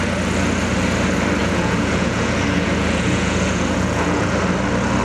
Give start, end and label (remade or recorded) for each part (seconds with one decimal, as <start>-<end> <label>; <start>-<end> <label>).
0.0-1.4 recorded; 1.4-4.4 remade; 4.4-5.0 recorded